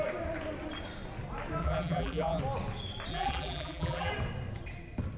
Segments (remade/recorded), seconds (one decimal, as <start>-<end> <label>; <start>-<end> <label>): 0.0-1.6 recorded; 1.6-2.4 remade; 2.4-3.1 recorded; 3.1-4.1 remade; 4.1-5.2 recorded

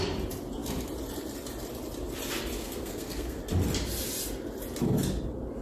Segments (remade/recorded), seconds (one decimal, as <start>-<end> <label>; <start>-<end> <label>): 0.0-2.6 recorded; 2.6-3.4 remade; 3.4-5.6 recorded

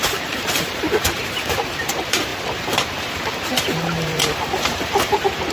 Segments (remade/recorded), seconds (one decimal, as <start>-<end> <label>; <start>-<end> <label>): 0.0-5.5 remade

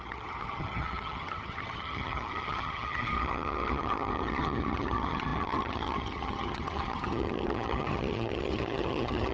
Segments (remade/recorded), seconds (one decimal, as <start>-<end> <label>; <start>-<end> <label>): 0.0-9.3 remade

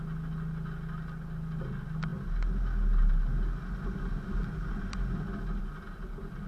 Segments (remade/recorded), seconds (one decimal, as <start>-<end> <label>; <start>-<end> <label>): 0.0-6.5 recorded

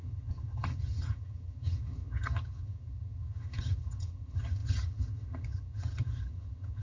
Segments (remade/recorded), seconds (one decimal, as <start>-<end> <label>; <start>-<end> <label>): 0.0-6.8 remade